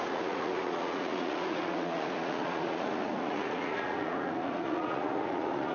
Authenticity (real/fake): fake